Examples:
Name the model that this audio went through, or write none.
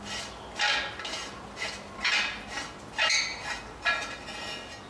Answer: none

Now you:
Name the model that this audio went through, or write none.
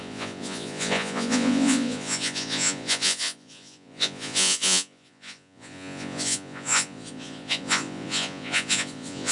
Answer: vocoder, Vocos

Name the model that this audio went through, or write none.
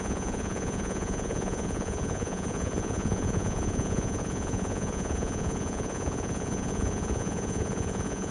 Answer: vocoder, Vocos